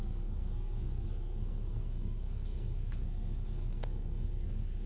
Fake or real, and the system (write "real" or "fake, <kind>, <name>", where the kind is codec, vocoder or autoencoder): fake, codec, SNAC